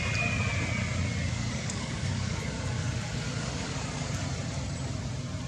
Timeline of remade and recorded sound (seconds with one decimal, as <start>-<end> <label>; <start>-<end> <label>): 0.0-1.3 recorded; 1.3-4.2 remade; 4.2-5.5 recorded